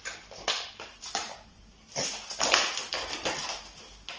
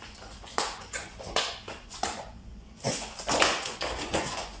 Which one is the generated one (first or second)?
second